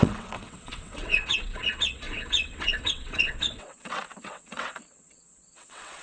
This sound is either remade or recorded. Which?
remade